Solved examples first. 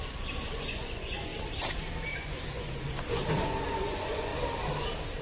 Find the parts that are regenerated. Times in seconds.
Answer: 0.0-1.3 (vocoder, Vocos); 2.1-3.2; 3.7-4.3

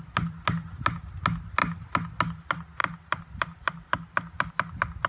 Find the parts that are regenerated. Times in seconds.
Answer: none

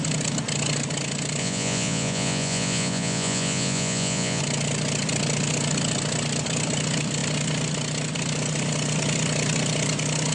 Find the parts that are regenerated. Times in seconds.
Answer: 1.4-4.4 (vocoder, Vocos)

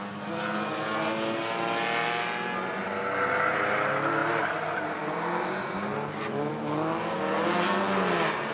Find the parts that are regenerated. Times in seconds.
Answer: none

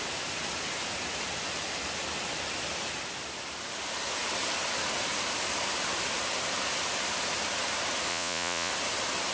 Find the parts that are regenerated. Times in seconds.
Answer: 8.1-8.7 (vocoder, Vocos)